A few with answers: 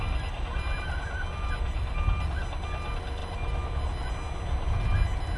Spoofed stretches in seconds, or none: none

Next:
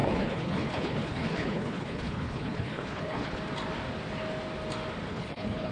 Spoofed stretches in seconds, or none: 0.0-3.4 (codec, HILCodec); 5.1-5.7

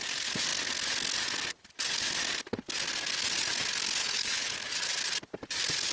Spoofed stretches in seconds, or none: 4.0-4.7 (codec, HILCodec)

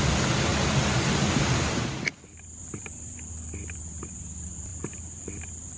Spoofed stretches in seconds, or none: none

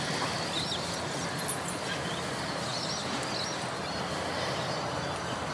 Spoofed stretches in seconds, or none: none

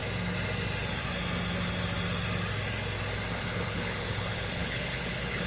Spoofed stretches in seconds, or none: 3.3-5.5 (codec, HILCodec)